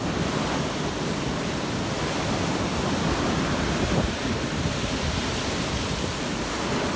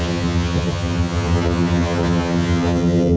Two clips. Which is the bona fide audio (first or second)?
first